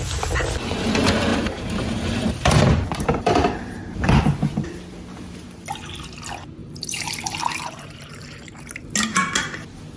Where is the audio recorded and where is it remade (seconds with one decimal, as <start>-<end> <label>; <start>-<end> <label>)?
0.0-1.3 recorded; 1.3-4.2 remade; 4.2-6.6 recorded; 6.6-8.7 remade; 8.7-10.0 recorded